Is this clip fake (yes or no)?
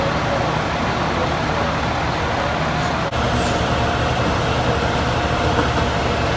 no